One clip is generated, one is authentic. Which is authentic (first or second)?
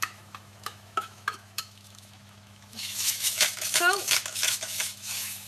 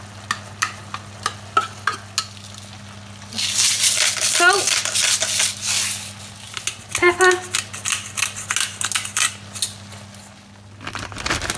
second